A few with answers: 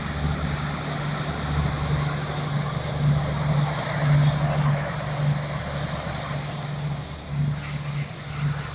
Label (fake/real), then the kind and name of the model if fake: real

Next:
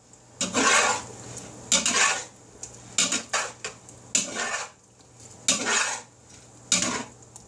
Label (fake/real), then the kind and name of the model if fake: real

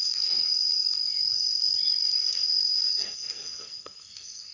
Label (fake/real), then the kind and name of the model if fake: fake, codec, SNAC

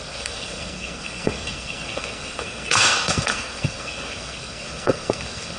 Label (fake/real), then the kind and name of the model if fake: fake, codec, SNAC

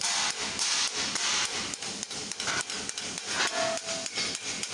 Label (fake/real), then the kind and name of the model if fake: real